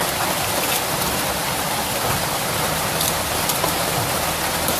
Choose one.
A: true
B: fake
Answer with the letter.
A